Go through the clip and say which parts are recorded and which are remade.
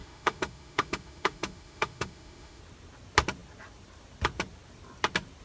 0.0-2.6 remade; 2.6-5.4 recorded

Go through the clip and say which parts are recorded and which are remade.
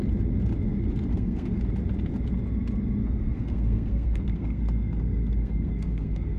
0.0-1.1 recorded; 1.1-1.6 remade; 1.6-3.0 recorded; 3.0-6.4 remade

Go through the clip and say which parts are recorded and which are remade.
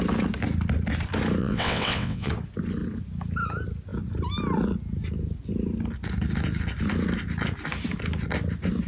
0.0-1.4 recorded; 1.4-2.3 remade; 2.3-8.9 recorded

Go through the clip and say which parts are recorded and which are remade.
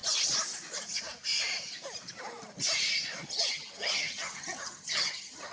0.0-3.3 recorded; 3.3-5.5 remade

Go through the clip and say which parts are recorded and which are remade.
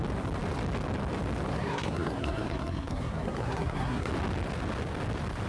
0.0-1.5 recorded; 1.5-4.1 remade; 4.1-5.5 recorded